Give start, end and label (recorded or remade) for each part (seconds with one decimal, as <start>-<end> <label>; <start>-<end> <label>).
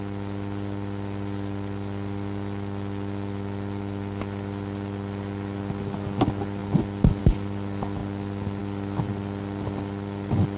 0.0-10.6 recorded